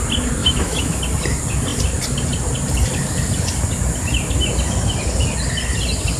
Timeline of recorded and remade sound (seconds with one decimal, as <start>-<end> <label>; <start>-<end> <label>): 0.0-0.4 recorded; 0.4-1.0 remade; 1.0-6.2 recorded